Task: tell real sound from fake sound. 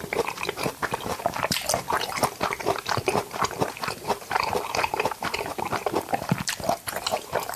fake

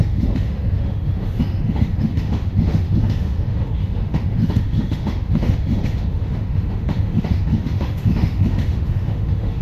fake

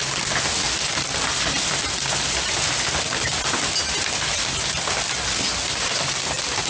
real